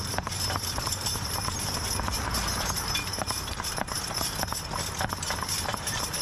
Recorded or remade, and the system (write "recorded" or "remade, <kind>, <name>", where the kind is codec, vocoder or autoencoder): remade, vocoder, BigVGAN v2